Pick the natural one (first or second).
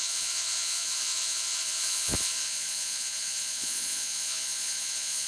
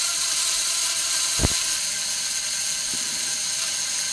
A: second